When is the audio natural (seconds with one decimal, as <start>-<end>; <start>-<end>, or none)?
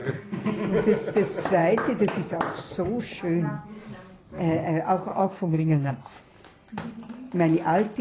0.5-5.1; 5.9-8.0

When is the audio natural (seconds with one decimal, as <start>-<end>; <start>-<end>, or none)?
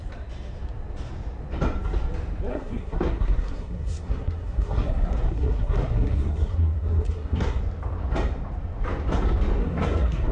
0.0-2.5; 7.6-9.6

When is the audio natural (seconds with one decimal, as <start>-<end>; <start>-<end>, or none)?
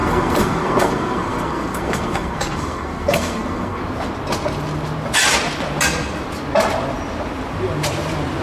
3.8-8.4